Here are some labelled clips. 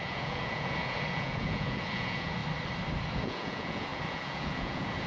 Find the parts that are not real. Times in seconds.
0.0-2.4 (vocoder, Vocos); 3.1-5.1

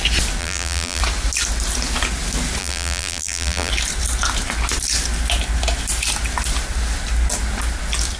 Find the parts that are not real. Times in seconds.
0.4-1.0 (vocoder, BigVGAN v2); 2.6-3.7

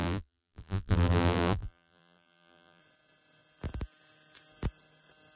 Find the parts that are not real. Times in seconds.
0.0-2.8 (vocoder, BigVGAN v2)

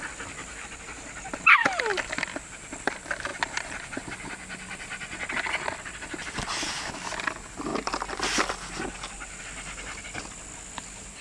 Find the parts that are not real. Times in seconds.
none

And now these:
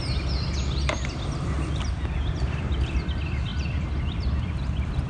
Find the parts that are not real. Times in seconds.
none

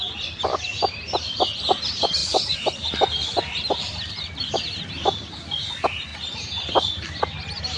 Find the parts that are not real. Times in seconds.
2.2-4.6 (vocoder, BigVGAN v2)